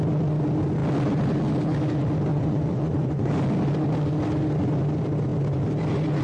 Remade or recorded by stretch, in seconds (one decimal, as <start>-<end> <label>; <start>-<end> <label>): 0.0-2.3 recorded; 2.3-3.3 remade; 3.3-6.2 recorded